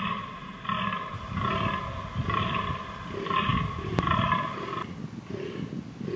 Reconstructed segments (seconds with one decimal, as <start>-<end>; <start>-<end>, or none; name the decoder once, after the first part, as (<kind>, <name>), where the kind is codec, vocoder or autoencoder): none